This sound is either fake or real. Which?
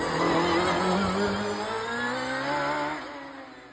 real